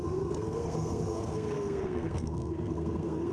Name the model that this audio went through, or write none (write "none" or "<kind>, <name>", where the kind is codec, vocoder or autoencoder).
codec, SNAC